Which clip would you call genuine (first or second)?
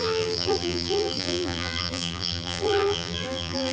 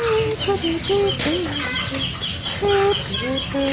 second